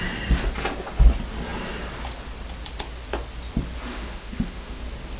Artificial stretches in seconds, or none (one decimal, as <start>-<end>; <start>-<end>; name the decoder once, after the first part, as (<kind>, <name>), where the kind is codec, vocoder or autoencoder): 3.9-4.8 (autoencoder, DAC-VAE)